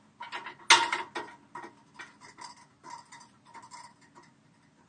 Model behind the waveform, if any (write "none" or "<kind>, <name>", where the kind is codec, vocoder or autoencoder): none